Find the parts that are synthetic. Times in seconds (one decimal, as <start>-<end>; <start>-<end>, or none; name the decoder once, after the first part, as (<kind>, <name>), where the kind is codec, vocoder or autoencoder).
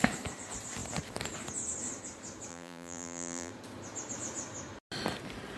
2.5-3.5 (vocoder, BigVGAN v2)